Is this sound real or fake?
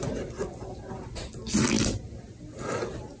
real